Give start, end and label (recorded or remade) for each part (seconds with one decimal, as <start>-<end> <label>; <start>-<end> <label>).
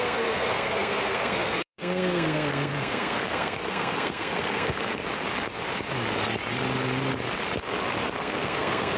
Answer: 0.0-5.0 remade; 5.0-8.2 recorded; 8.2-9.0 remade